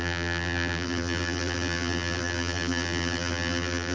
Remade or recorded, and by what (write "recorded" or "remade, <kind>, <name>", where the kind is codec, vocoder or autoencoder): remade, vocoder, BigVGAN v2